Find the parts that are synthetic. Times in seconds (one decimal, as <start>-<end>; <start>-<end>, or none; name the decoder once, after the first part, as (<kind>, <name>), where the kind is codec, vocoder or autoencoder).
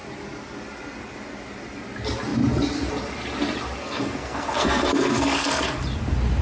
3.8-5.8 (codec, SNAC)